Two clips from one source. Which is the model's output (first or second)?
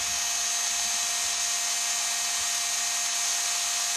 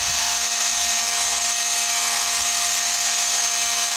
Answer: second